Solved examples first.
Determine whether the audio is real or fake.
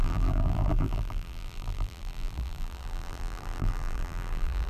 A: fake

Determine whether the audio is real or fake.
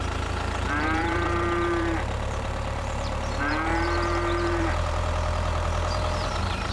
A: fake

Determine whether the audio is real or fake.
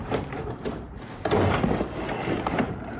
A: fake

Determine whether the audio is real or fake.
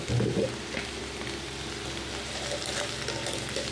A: real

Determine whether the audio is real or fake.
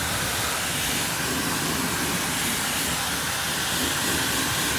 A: real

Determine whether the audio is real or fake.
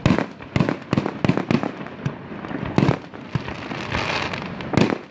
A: real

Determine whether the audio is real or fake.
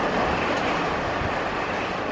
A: real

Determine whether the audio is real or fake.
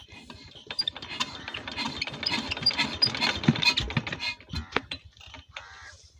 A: real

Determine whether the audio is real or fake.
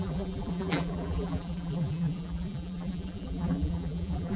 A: fake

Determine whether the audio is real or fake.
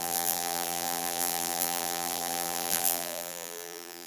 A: fake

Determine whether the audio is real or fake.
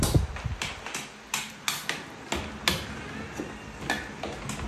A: real